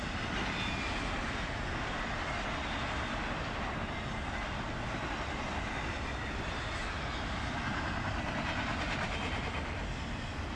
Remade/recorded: recorded